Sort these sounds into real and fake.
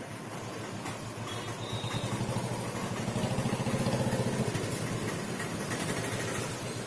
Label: real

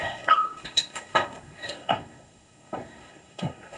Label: fake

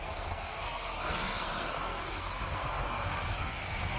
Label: fake